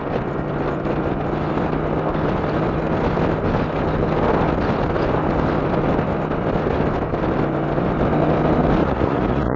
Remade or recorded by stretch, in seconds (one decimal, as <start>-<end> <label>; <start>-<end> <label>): 0.0-8.8 recorded; 8.8-9.6 remade